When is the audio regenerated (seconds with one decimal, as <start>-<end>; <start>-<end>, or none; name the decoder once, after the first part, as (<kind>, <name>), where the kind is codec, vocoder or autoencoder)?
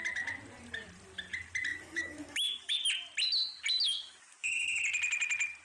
1.7-2.7 (autoencoder, DAC-VAE); 3.9-4.8